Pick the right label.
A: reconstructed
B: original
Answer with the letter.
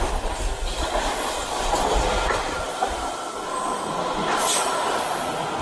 B